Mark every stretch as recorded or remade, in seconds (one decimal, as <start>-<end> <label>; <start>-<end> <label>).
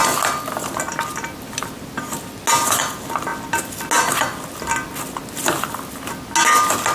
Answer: 0.0-6.9 recorded